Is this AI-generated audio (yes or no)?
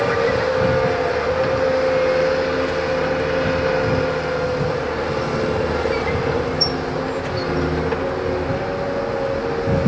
no